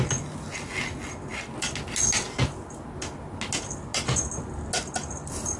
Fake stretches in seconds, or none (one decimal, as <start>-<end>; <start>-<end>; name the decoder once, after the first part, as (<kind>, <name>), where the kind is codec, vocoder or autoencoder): none